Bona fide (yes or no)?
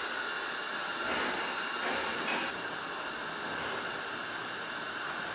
yes